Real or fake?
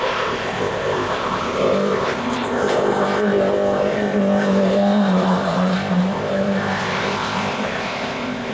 fake